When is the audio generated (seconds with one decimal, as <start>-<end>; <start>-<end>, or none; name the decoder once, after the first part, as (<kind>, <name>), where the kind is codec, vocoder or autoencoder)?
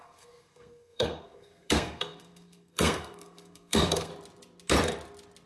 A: 0.0-4.1 (codec, SNAC)